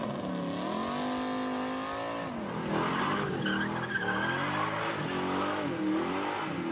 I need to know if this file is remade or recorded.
recorded